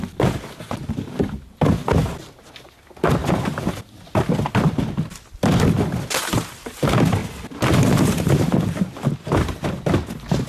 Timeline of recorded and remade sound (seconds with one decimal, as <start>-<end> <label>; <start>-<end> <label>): 0.0-3.2 recorded; 3.2-5.6 remade; 5.6-7.2 recorded; 7.2-9.0 remade; 9.0-10.5 recorded